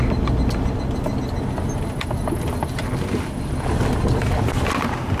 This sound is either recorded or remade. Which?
recorded